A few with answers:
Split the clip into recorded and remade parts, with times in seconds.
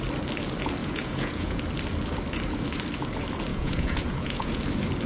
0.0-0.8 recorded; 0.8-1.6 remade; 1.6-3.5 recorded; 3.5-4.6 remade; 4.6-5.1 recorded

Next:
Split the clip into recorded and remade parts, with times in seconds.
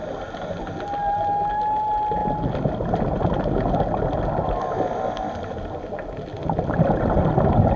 0.0-7.8 recorded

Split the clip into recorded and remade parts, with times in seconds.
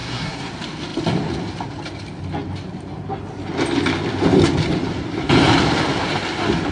0.0-0.5 remade; 0.5-6.7 recorded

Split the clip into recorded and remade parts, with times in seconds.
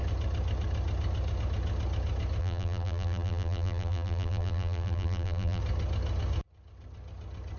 0.0-2.4 recorded; 2.4-5.6 remade; 5.6-7.6 recorded